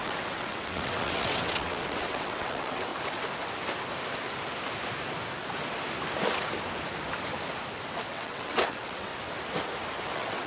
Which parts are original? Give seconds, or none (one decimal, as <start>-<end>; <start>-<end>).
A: 2.9-8.1; 9.1-10.0